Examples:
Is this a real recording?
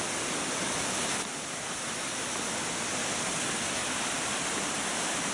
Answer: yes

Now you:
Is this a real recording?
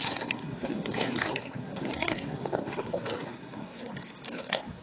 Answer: no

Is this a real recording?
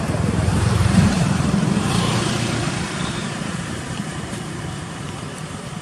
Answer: no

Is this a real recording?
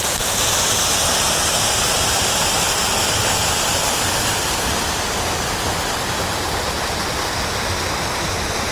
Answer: yes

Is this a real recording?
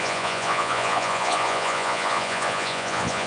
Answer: no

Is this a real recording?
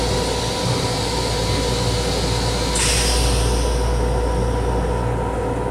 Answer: yes